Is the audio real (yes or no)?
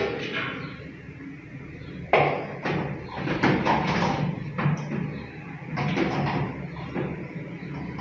yes